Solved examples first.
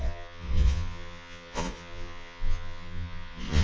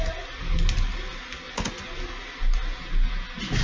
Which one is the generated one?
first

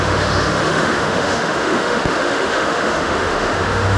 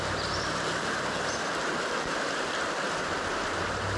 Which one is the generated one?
first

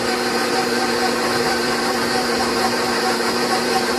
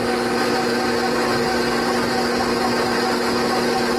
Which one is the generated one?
first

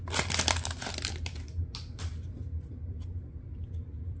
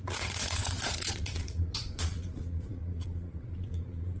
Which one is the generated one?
second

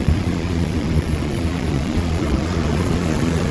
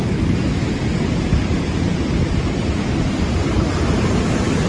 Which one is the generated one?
first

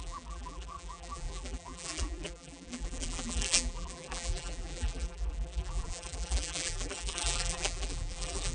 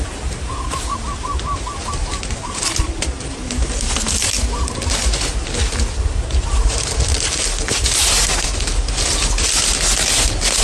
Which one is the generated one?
first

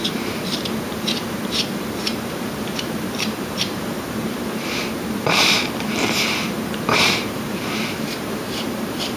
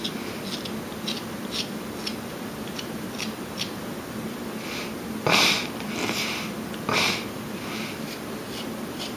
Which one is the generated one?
first